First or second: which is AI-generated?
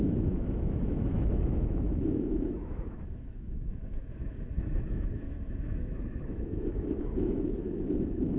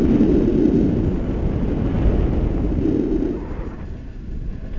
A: first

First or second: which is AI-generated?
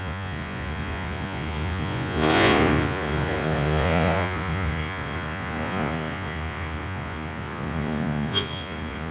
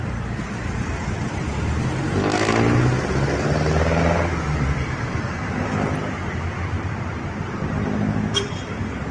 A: first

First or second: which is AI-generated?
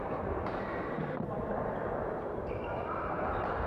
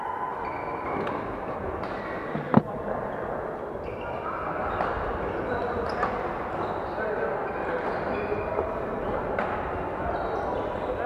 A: first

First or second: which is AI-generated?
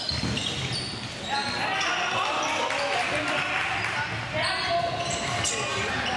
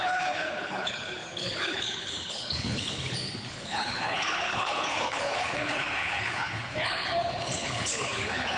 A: second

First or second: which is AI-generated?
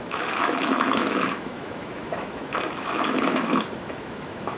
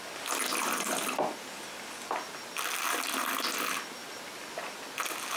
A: first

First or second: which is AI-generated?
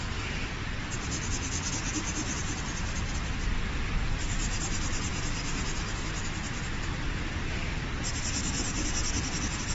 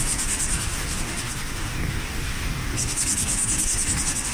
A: second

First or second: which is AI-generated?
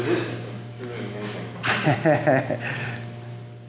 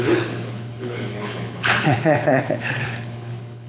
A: second